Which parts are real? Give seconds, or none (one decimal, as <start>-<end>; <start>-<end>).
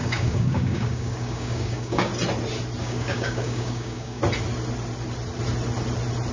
2.1-2.8; 4.2-6.3